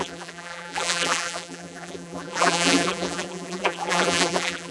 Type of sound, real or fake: fake